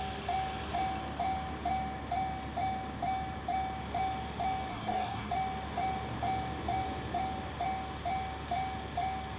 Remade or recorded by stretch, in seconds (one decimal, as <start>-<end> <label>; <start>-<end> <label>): 0.0-4.7 recorded; 4.7-5.3 remade; 5.3-9.4 recorded